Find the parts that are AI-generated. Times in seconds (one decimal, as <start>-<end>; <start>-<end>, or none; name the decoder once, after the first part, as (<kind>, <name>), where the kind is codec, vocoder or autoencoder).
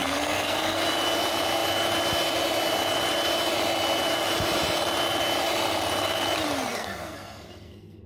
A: 0.0-0.8 (codec, SNAC); 6.7-8.1